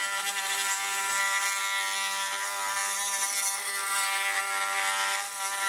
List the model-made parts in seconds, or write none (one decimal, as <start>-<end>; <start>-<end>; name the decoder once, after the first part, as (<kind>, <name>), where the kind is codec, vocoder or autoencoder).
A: none